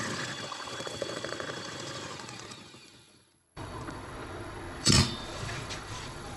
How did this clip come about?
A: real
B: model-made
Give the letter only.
B